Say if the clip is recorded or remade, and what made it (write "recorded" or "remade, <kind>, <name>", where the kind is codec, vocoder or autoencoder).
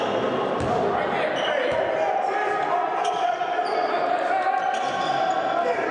recorded